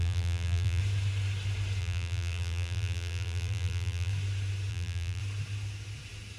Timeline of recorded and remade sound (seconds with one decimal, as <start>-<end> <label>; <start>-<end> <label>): 0.0-0.8 remade; 0.8-1.8 recorded; 1.8-4.1 remade; 4.1-4.7 recorded; 4.7-5.2 remade; 5.2-6.4 recorded